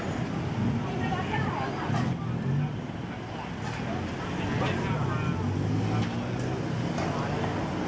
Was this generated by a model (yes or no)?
no